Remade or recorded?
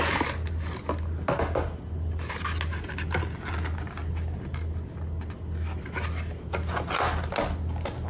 recorded